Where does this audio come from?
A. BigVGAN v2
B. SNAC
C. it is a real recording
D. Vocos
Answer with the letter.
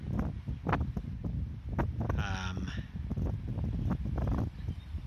C